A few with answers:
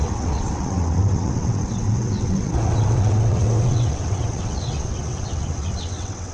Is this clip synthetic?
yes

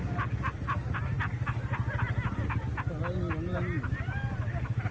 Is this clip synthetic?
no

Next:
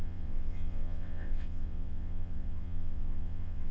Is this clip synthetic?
yes